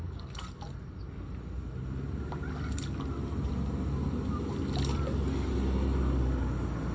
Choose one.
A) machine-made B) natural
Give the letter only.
B